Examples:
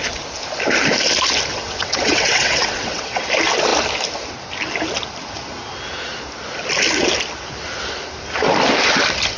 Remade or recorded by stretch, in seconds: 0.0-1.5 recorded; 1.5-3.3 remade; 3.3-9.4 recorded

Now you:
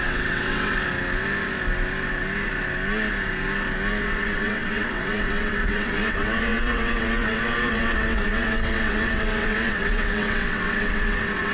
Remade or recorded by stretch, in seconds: 0.0-0.8 remade; 0.8-4.0 recorded; 4.0-11.5 remade

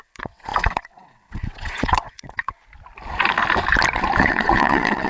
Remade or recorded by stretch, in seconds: 0.0-2.6 remade; 2.6-4.2 recorded; 4.2-5.1 remade

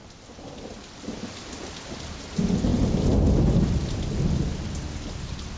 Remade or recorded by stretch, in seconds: 0.0-5.6 recorded